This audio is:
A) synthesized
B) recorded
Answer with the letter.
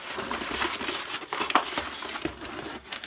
B